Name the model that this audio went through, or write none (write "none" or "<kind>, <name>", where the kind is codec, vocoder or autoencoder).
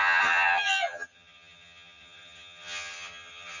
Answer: vocoder, HiFi-GAN